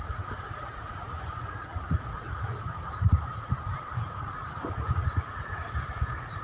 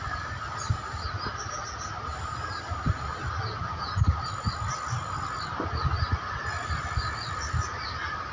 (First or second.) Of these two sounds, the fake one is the first